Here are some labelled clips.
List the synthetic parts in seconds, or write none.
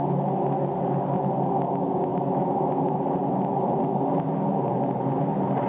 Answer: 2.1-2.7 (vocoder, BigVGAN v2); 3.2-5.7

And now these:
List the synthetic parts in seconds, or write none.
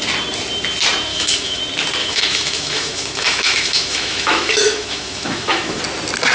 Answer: 1.1-1.6 (autoencoder, DAC-VAE); 2.0-5.8